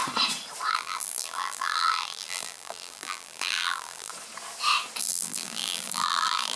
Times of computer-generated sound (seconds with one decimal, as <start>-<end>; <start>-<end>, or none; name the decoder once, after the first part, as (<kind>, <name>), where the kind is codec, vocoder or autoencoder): 0.7-4.1 (vocoder, BigVGAN v2); 5.0-6.6